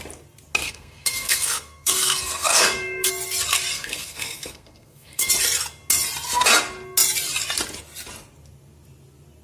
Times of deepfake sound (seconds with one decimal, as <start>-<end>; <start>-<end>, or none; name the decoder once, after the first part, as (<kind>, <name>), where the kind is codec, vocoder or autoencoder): 0.6-3.1 (codec, SNAC); 3.7-5.3